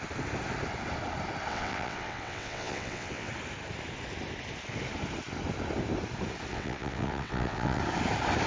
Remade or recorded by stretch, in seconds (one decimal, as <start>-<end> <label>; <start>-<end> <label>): 0.0-1.5 recorded; 1.5-3.3 remade; 3.3-6.5 recorded; 6.5-7.8 remade; 7.8-8.5 recorded